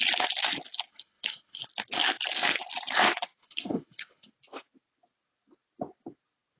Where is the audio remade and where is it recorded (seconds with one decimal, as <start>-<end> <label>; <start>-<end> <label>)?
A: 0.0-0.9 recorded; 0.9-1.7 remade; 1.7-3.4 recorded; 3.4-4.3 remade; 4.3-6.6 recorded